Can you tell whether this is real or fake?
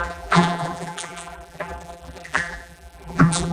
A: fake